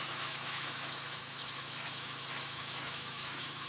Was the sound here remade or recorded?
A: remade